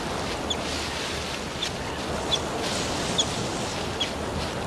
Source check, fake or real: real